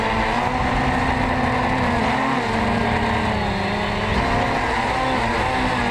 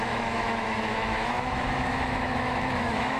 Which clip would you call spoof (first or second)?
second